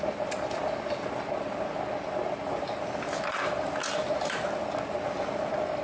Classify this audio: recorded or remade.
recorded